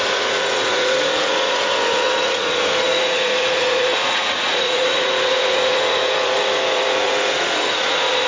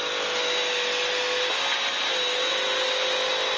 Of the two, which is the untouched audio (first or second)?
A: second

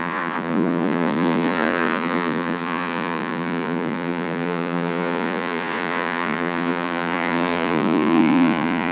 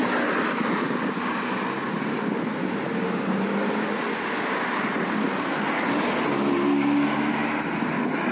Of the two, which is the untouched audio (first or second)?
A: second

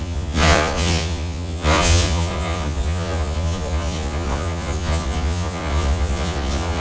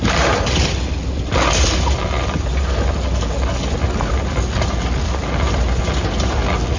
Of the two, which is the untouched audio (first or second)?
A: second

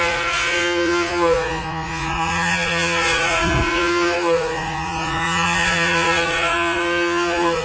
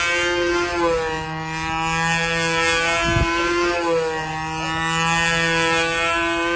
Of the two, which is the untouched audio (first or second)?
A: second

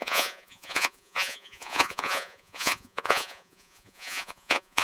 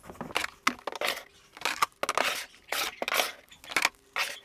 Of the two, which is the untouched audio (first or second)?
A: second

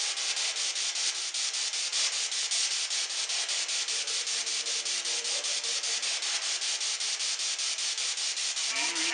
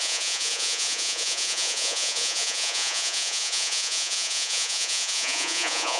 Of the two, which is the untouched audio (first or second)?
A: first